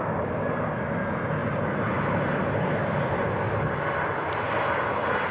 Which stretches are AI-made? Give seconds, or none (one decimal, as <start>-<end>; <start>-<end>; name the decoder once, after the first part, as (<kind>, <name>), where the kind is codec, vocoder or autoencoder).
none

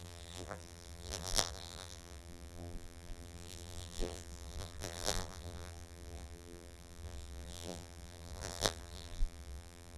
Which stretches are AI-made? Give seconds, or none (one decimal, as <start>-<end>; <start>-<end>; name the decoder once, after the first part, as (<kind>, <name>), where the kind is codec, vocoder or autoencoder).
0.0-10.0 (vocoder, BigVGAN v2)

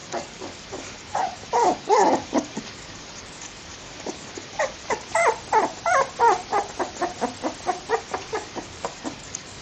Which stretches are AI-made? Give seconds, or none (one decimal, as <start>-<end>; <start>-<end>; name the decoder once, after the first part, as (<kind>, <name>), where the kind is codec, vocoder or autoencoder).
0.0-5.2 (codec, DAC); 8.0-9.6

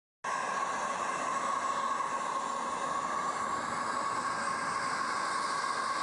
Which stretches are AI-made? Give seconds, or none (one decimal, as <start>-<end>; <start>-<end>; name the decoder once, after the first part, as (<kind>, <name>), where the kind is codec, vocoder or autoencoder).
none

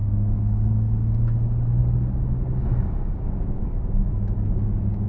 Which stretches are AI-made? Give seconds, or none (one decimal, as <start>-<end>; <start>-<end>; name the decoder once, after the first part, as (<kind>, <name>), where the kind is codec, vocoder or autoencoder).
0.0-1.2 (codec, DAC); 1.8-5.1

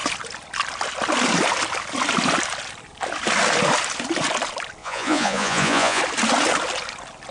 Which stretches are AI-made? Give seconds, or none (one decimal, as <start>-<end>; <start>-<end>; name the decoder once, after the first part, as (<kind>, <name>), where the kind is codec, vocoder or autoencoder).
4.8-6.0 (vocoder, Vocos)

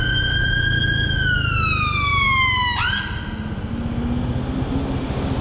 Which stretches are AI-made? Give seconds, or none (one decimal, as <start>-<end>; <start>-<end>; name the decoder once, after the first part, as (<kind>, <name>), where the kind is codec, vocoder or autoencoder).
none

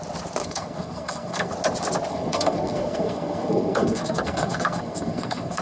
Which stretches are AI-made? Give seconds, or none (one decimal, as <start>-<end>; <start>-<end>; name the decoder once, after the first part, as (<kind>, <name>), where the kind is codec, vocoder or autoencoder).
0.4-1.5 (codec, SNAC); 2.1-5.6